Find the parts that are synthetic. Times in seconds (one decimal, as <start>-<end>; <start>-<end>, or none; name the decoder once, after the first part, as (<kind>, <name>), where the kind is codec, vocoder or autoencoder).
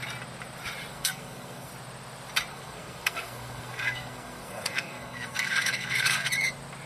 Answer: 0.9-1.7 (codec, SNAC); 2.5-6.3